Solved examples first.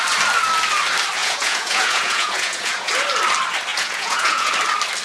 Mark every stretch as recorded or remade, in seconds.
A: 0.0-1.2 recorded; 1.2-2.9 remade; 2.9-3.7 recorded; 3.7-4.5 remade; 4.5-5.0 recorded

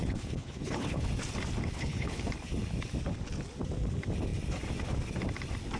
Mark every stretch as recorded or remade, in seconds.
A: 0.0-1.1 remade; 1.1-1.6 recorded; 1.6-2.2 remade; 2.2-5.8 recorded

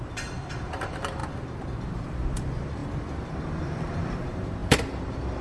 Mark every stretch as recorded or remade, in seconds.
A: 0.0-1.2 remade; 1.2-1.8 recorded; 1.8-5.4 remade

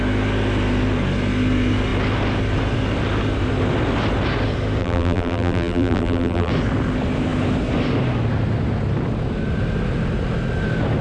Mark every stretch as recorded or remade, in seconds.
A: 0.0-4.8 recorded; 4.8-6.5 remade; 6.5-11.0 recorded

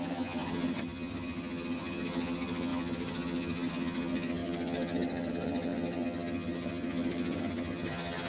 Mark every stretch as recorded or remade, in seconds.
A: 0.0-8.3 remade